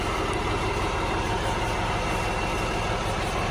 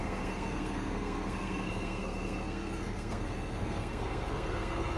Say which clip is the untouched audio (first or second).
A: first